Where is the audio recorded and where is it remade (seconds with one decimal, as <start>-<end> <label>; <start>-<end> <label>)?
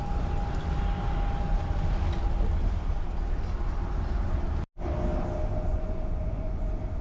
0.0-5.7 recorded; 5.7-6.6 remade; 6.6-7.0 recorded